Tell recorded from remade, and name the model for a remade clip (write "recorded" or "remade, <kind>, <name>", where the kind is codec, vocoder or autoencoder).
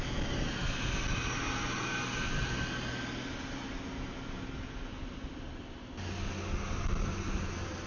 recorded